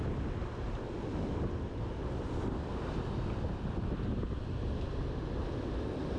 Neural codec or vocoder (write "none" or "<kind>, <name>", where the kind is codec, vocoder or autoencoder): none